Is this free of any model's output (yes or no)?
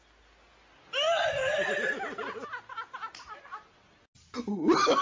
yes